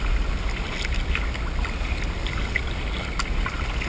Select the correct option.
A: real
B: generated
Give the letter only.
A